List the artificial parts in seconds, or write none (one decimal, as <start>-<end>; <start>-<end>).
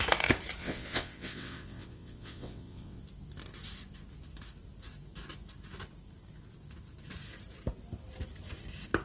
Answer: 0.6-3.0